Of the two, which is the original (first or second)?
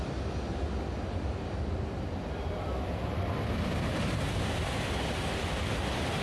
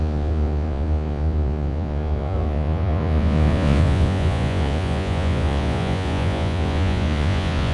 first